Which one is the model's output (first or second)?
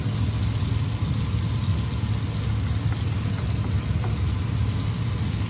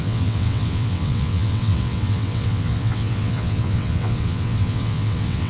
second